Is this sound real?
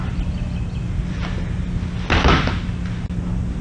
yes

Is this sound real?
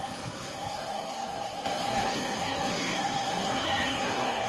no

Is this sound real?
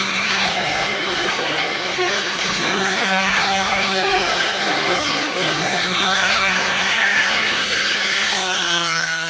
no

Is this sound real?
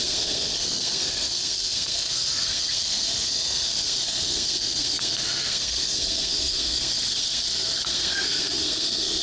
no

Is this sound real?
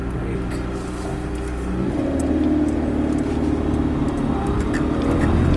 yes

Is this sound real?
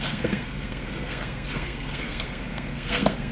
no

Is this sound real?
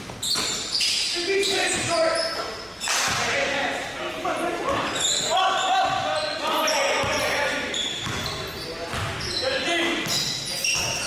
yes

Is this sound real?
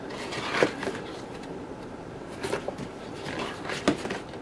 yes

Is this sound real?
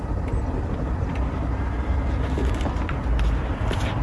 yes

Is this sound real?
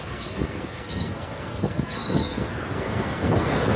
no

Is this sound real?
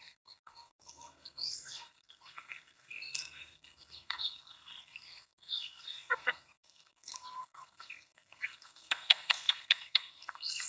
no